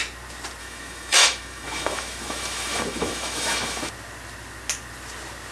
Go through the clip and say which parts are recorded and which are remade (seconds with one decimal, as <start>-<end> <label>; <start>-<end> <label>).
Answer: 0.0-0.6 recorded; 0.6-3.9 remade; 3.9-5.5 recorded